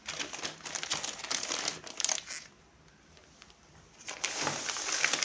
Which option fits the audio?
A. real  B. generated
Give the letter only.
A